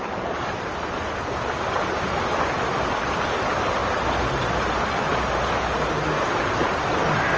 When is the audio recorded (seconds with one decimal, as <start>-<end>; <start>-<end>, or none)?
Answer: 0.0-7.4